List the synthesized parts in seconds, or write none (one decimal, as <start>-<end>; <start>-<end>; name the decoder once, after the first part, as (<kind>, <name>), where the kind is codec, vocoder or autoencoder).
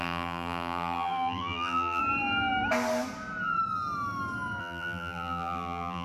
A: 0.0-2.0 (vocoder, BigVGAN v2); 4.6-6.0